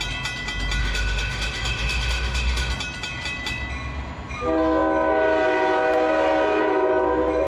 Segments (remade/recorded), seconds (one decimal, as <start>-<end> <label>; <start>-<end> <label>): 0.0-0.8 recorded; 0.8-2.7 remade; 2.7-7.5 recorded